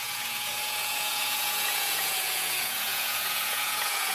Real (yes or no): no